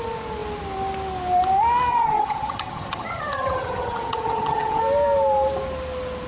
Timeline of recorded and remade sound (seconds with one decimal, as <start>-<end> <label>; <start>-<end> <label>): 0.0-1.9 recorded; 1.9-4.8 remade; 4.8-6.3 recorded